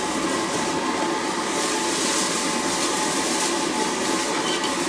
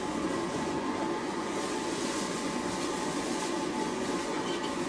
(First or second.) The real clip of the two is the first